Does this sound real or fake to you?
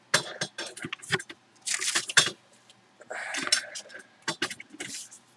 real